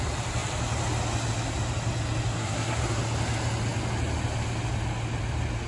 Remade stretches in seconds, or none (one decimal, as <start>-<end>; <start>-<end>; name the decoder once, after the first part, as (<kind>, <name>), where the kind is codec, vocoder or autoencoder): 2.4-3.0 (codec, SNAC)